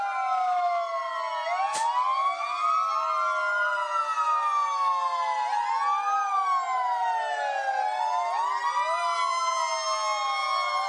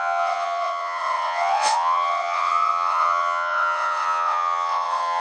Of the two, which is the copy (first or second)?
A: second